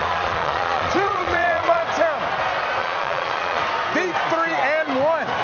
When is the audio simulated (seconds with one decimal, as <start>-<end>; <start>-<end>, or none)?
0.0-1.8; 2.8-3.6